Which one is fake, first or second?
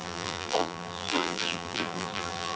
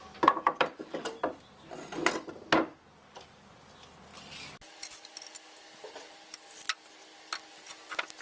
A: first